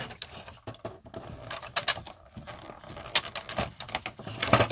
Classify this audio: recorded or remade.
recorded